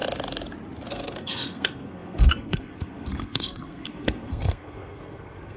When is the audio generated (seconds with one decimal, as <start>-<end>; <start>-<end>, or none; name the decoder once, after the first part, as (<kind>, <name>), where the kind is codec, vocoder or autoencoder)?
0.9-5.6 (codec, SNAC)